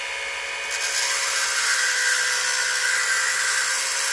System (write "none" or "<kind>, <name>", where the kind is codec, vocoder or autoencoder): none